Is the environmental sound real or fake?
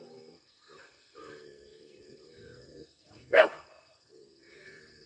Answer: fake